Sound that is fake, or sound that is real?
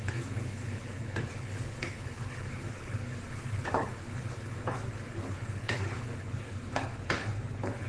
fake